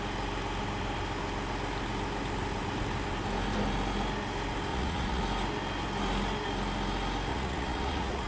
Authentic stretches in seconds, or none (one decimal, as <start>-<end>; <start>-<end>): 0.0-4.7; 5.2-7.3